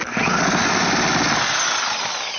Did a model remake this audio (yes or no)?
no